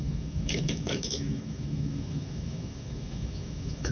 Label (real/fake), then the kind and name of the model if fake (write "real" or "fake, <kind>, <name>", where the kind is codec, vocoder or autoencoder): fake, autoencoder, DAC-VAE